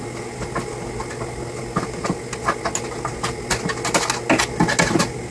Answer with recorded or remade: recorded